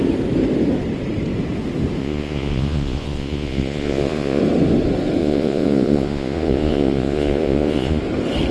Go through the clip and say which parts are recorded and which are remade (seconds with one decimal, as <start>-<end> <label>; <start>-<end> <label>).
0.0-2.0 recorded; 2.0-4.4 remade; 4.4-5.2 recorded; 5.2-8.0 remade; 8.0-8.5 recorded